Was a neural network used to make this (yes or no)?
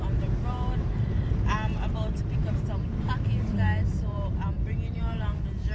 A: yes